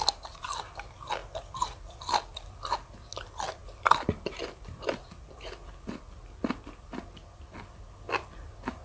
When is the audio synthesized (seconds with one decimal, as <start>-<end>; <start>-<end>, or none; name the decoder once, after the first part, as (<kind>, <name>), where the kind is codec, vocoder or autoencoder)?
none